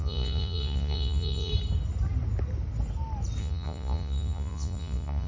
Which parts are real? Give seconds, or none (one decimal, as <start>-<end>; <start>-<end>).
1.5-3.4